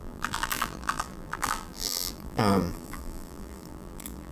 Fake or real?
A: fake